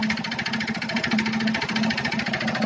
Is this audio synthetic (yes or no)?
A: no